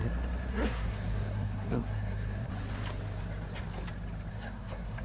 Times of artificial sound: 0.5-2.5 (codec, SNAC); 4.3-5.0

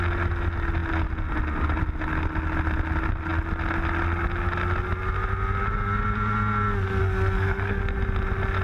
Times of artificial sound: 7.0-7.8 (codec, SNAC)

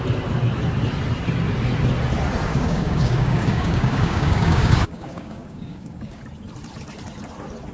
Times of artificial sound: 2.5-6.2 (codec, DAC)